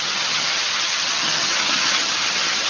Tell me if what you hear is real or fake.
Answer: fake